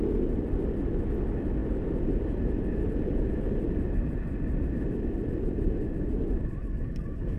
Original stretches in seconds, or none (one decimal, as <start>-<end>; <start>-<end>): 0.0-6.6